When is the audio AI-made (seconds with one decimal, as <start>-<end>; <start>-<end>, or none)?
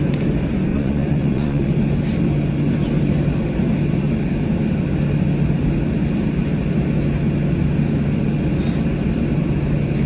0.7-1.7